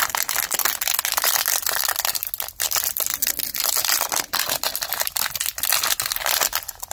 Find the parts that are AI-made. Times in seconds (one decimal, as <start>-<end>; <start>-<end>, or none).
none